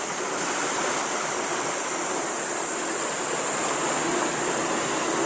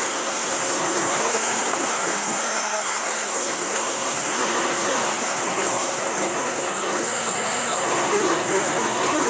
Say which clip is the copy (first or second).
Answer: second